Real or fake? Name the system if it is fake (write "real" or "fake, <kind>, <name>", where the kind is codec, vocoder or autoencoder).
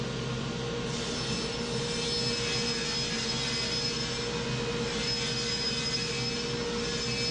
real